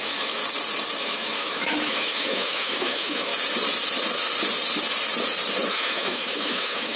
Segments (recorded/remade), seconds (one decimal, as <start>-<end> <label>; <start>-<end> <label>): 0.0-0.4 remade; 0.4-1.0 recorded; 1.0-3.3 remade; 3.3-5.7 recorded; 5.7-7.0 remade